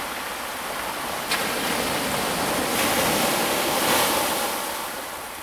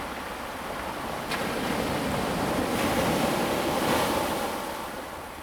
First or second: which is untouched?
first